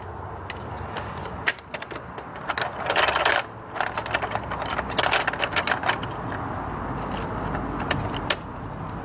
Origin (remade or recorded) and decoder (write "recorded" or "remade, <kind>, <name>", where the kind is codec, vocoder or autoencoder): recorded